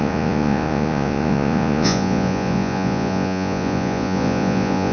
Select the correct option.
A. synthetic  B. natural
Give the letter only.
A